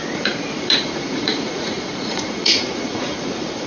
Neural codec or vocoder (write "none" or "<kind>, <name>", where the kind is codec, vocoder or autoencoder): vocoder, Vocos